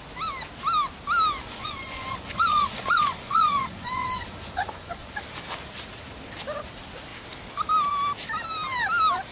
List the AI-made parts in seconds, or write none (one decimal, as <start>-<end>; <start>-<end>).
1.4-5.2